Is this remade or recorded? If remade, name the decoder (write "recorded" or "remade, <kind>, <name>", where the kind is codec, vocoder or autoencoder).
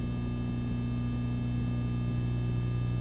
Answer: recorded